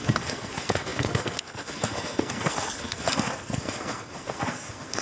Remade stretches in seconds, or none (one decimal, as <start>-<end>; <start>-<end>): 0.0-5.0